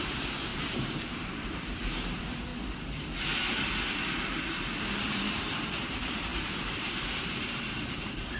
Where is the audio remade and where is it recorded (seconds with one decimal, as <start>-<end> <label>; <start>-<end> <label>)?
0.0-2.5 remade; 2.5-4.1 recorded; 4.1-8.4 remade